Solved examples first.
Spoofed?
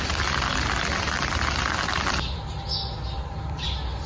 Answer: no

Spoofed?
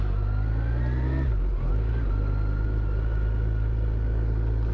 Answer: no